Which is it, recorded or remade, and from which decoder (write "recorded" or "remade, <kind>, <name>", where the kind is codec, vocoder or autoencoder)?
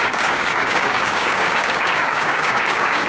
remade, codec, DAC